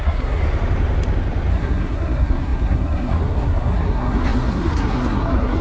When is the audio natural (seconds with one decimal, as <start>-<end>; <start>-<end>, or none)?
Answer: 0.4-1.5